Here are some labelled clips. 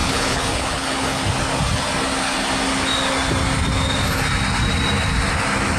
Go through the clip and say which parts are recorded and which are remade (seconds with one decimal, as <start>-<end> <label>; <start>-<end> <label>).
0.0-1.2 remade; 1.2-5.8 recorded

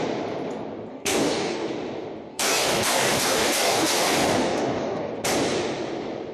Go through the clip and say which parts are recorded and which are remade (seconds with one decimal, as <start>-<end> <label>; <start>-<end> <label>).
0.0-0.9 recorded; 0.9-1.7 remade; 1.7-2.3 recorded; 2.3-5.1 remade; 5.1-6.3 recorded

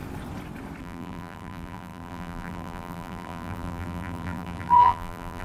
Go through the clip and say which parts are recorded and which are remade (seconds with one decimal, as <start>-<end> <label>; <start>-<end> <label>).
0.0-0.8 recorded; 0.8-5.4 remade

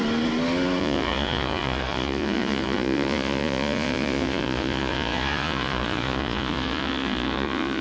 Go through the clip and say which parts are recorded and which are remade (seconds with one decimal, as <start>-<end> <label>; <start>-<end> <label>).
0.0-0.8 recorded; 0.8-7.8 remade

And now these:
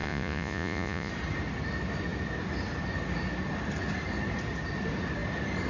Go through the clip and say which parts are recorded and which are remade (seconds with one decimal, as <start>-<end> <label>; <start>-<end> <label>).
0.0-1.1 remade; 1.1-5.7 recorded